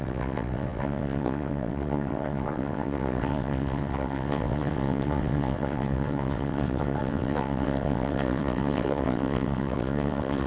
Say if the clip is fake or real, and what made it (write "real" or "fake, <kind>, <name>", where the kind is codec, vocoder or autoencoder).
fake, vocoder, WaveNeXt